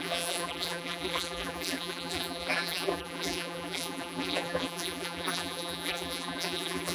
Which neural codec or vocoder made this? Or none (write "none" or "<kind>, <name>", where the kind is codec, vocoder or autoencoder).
vocoder, BigVGAN v2